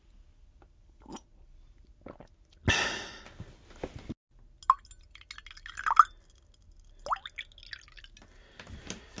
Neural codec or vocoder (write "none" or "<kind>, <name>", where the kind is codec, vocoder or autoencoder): none